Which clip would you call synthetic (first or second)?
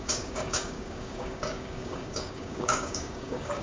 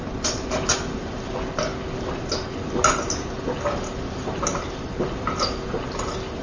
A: first